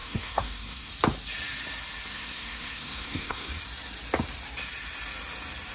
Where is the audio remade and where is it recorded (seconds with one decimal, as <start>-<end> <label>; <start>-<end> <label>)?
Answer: 0.0-0.9 remade; 0.9-2.1 recorded; 2.1-3.6 remade; 3.6-5.7 recorded

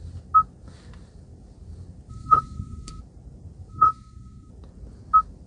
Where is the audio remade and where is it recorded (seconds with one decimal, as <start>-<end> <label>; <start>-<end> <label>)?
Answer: 0.0-2.1 recorded; 2.1-3.0 remade; 3.0-3.7 recorded; 3.7-4.5 remade; 4.5-5.5 recorded

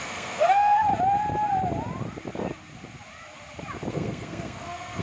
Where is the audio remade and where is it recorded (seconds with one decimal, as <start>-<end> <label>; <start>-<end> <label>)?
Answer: 0.0-0.9 remade; 0.9-3.9 recorded; 3.9-5.0 remade

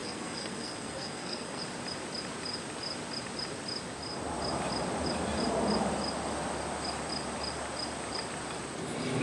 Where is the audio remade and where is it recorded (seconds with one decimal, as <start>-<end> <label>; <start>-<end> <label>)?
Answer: 0.0-1.6 remade; 1.6-9.2 recorded